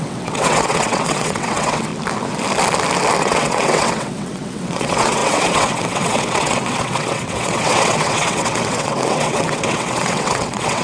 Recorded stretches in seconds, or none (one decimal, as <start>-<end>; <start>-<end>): 1.9-3.2